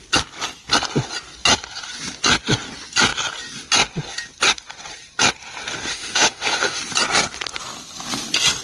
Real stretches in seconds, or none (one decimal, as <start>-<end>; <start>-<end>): 0.0-5.9; 6.8-8.6